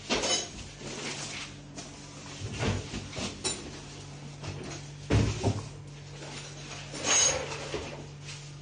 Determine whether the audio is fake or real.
real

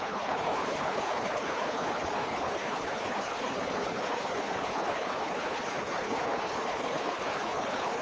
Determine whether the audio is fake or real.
fake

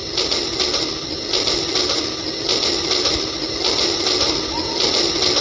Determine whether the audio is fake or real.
real